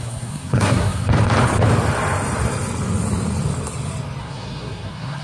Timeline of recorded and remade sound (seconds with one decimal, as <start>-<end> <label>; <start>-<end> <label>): 0.0-1.1 remade; 1.1-4.2 recorded; 4.2-5.2 remade